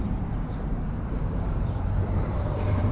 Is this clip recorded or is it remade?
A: remade